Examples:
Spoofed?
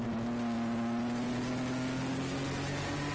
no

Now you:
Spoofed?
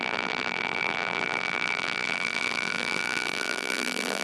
yes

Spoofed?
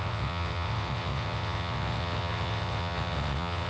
yes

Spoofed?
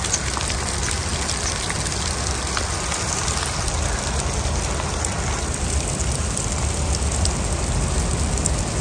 no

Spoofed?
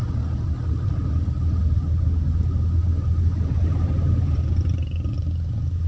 no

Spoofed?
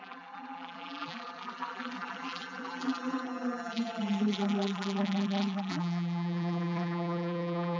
yes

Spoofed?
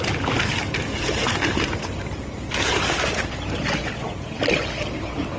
no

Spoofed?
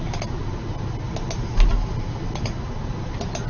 no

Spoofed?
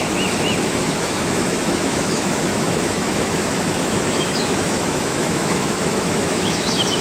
yes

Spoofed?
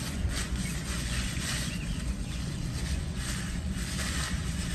yes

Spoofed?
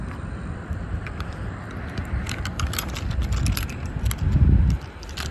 no